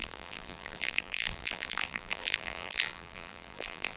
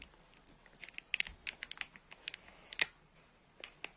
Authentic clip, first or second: second